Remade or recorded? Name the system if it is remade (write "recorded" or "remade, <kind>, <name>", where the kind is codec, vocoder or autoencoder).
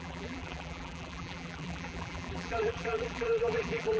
remade, vocoder, BigVGAN v2